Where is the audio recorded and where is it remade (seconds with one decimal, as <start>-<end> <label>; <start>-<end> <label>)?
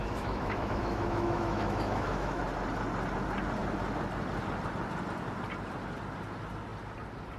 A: 0.0-2.4 remade; 2.4-7.4 recorded